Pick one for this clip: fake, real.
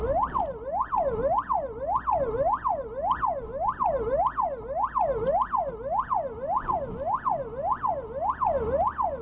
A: real